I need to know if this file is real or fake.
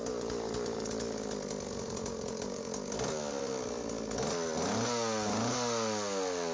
real